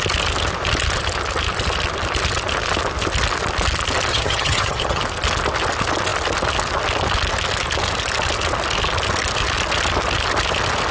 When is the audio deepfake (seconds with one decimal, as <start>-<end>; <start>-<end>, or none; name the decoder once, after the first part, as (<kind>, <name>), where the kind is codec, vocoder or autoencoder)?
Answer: 4.1-5.0 (vocoder, HiFi-GAN)